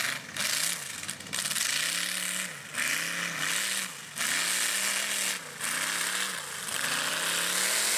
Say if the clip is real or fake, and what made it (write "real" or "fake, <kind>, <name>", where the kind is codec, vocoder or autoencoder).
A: real